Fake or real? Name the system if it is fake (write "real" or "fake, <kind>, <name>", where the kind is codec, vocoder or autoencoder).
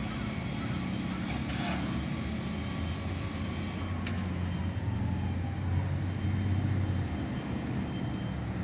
real